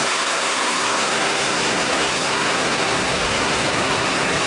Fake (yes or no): yes